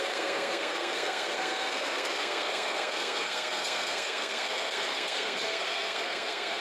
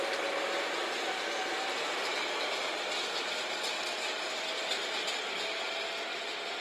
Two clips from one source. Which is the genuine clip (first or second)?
second